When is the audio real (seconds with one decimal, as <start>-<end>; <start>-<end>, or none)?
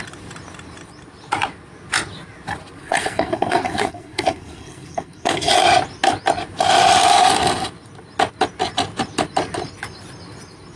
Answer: 0.0-2.8; 5.5-10.8